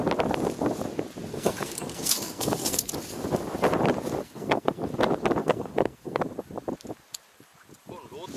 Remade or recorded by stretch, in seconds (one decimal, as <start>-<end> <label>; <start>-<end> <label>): 0.0-1.3 recorded; 1.3-2.9 remade; 2.9-4.2 recorded; 4.2-4.9 remade; 4.9-5.4 recorded; 5.4-6.2 remade; 6.2-8.4 recorded